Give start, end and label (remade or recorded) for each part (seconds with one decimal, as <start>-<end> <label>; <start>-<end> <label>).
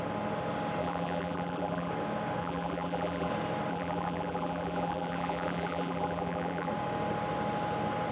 0.0-0.8 recorded; 0.8-1.9 remade; 1.9-2.4 recorded; 2.4-3.3 remade; 3.3-3.7 recorded; 3.7-6.7 remade; 6.7-8.1 recorded